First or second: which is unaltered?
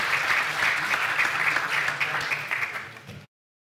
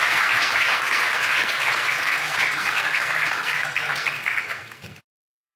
first